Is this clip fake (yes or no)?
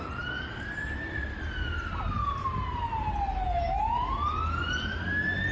no